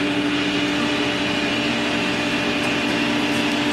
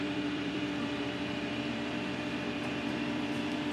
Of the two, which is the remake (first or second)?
second